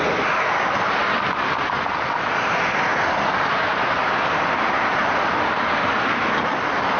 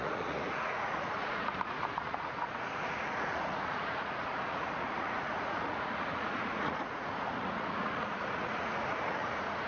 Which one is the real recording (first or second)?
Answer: first